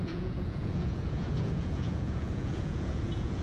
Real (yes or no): no